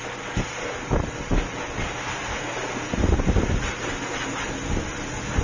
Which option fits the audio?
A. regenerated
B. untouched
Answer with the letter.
B